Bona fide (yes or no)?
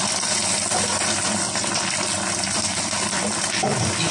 yes